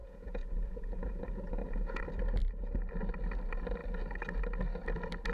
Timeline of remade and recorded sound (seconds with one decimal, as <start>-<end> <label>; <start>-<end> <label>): 0.0-2.0 remade; 2.0-5.3 recorded